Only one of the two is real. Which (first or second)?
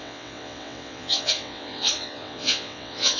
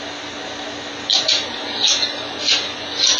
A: second